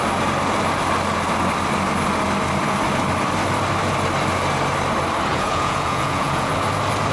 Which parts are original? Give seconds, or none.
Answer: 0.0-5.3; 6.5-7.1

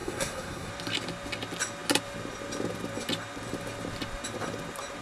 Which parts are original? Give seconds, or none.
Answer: 0.7-5.0

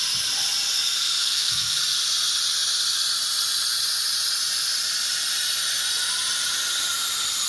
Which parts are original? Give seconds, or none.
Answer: 0.0-1.2; 1.8-7.5

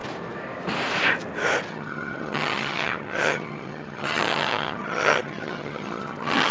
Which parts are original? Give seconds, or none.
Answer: 0.0-1.7

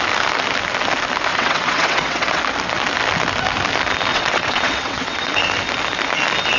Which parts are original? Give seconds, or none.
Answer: 0.0-1.3; 2.4-4.1; 5.3-6.6